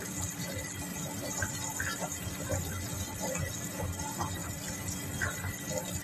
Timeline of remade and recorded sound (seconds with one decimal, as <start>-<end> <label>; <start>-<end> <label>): 0.0-6.0 recorded